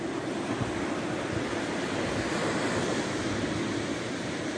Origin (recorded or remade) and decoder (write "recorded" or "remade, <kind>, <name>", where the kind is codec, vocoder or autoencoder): recorded